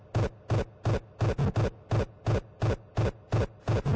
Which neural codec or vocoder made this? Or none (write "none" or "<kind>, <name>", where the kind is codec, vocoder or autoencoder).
none